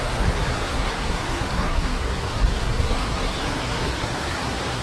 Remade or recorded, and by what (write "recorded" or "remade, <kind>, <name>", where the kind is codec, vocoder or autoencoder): remade, codec, SNAC